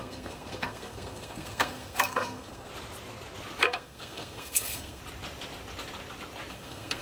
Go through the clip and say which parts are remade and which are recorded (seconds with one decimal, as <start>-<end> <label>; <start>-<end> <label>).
0.0-2.7 remade; 2.7-3.6 recorded; 3.6-5.0 remade; 5.0-6.5 recorded; 6.5-7.0 remade